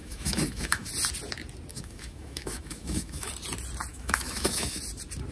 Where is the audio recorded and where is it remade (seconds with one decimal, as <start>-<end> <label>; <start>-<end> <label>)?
0.0-0.9 remade; 0.9-1.7 recorded; 1.7-3.3 remade; 3.3-3.9 recorded; 3.9-4.8 remade; 4.8-5.3 recorded

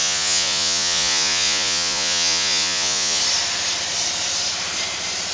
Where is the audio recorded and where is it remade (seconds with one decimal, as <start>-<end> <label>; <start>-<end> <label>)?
0.0-3.2 remade; 3.2-5.3 recorded

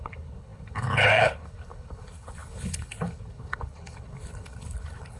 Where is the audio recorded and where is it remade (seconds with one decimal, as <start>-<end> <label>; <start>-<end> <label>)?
0.0-5.2 remade

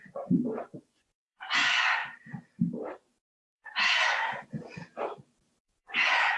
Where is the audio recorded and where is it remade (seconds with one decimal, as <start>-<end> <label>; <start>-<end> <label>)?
0.0-2.0 remade; 2.0-3.5 recorded; 3.5-4.8 remade; 4.8-5.6 recorded; 5.6-6.4 remade